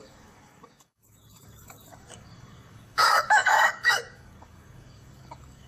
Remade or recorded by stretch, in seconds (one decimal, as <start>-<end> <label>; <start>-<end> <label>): 0.0-5.7 remade